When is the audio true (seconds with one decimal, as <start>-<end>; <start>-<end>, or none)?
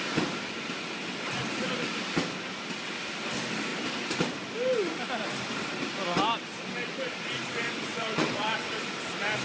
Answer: 0.0-7.9; 8.7-9.4